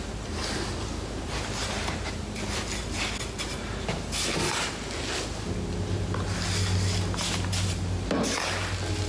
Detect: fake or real real